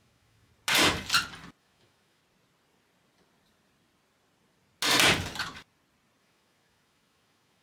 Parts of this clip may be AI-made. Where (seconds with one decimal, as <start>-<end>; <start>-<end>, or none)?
0.0-0.5; 1.6-2.2; 6.2-7.6